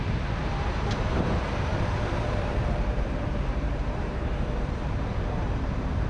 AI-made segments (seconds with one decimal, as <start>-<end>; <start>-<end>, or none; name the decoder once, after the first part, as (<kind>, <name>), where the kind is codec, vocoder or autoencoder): 0.0-1.7 (vocoder, BigVGAN v2); 2.2-6.1